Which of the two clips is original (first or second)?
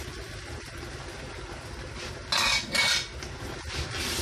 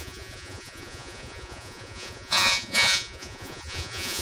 first